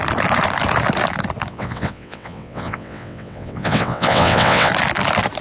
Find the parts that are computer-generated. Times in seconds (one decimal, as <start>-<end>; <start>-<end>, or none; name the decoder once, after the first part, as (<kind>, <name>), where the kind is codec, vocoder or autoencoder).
1.5-4.7 (vocoder, WaveNeXt)